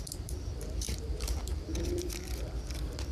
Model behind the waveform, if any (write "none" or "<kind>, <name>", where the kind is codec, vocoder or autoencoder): vocoder, BigVGAN v2